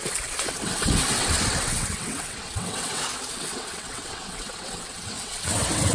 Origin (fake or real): fake